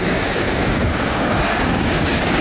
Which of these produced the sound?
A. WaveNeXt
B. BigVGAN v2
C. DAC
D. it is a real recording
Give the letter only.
C